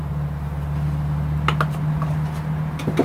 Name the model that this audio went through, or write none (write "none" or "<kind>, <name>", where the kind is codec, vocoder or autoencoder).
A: none